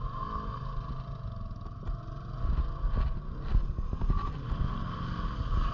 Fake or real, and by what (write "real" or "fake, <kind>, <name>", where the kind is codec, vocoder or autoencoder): real